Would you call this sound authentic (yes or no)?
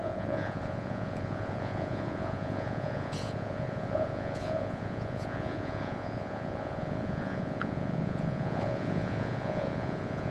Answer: no